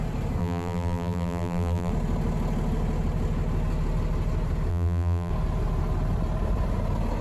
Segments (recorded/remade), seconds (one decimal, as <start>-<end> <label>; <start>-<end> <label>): 0.0-0.4 recorded; 0.4-1.9 remade; 1.9-4.7 recorded; 4.7-5.3 remade; 5.3-7.2 recorded

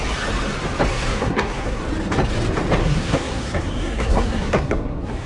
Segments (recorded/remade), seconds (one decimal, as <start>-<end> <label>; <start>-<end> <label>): 0.0-0.9 recorded; 0.9-1.8 remade; 1.8-2.8 recorded; 2.8-5.3 remade

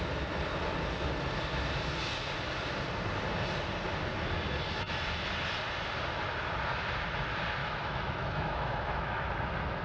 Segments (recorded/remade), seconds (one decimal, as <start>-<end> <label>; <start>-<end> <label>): 0.0-7.6 recorded; 7.6-9.3 remade; 9.3-9.8 recorded